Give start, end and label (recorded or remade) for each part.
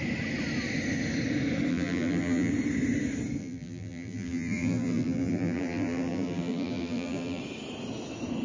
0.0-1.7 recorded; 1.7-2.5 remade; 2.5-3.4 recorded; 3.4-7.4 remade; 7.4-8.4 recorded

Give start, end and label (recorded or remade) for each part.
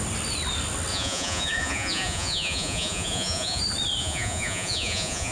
0.0-0.9 recorded; 0.9-3.6 remade; 3.6-4.0 recorded; 4.0-5.3 remade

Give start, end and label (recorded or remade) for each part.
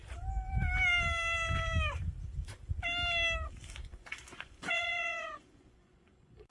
0.0-3.9 recorded; 3.9-6.5 remade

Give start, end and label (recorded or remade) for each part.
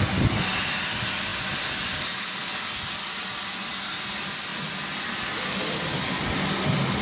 0.0-7.0 recorded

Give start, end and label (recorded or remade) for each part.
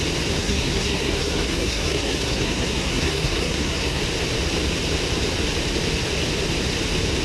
0.0-0.4 recorded; 0.4-4.0 remade; 4.0-7.2 recorded